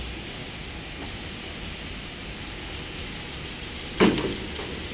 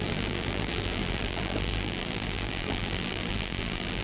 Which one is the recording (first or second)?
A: first